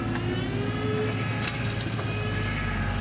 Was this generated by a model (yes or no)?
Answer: no